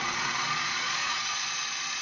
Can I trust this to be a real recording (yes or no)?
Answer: no